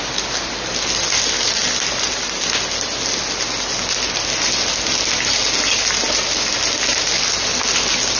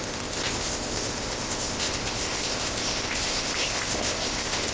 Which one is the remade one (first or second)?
second